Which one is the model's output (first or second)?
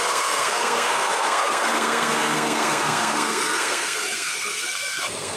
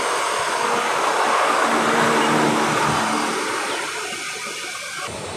first